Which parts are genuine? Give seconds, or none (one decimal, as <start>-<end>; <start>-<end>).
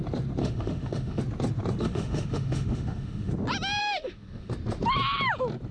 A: 0.0-0.4; 1.2-1.8; 3.3-3.8; 4.5-5.7